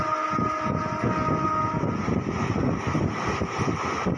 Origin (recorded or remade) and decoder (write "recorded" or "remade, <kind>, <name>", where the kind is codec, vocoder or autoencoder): recorded